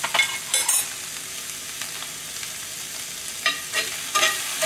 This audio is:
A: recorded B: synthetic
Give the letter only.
A